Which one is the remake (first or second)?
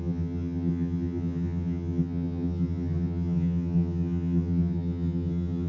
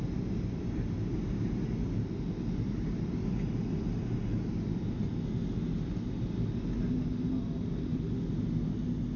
first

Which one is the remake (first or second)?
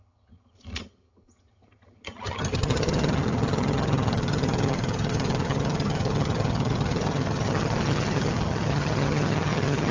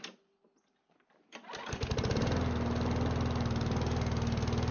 first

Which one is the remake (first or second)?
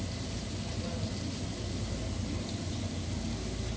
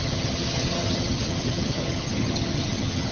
second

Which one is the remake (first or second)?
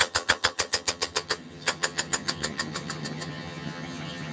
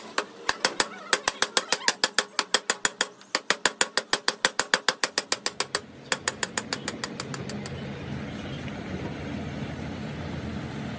first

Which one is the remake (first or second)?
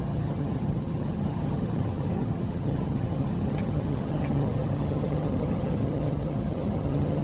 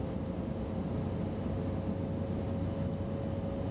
first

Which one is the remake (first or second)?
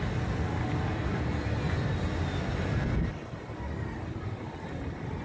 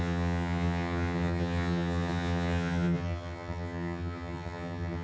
second